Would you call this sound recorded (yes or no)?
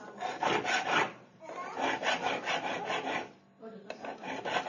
yes